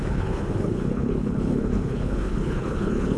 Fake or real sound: fake